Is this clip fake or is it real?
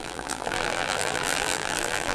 fake